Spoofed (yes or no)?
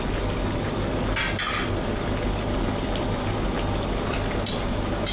no